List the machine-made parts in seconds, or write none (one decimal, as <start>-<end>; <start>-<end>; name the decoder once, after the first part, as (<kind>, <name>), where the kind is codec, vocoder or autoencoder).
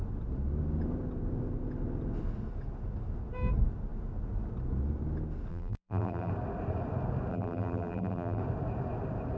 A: 5.5-6.3 (vocoder, BigVGAN v2); 7.3-8.4